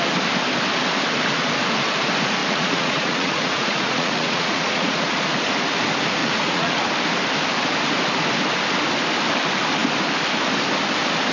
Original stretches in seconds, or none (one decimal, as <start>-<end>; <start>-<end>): 0.0-2.4; 5.2-6.2; 6.9-11.3